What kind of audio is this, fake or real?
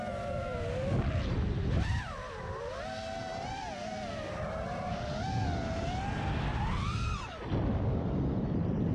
real